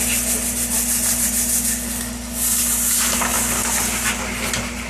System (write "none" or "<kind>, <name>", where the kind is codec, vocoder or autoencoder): none